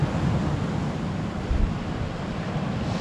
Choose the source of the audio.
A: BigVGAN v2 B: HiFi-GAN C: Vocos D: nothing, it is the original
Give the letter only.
D